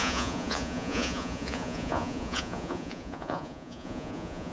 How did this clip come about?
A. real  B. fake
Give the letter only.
B